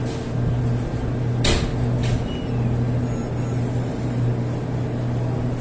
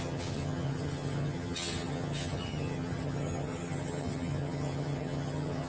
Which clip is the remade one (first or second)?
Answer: second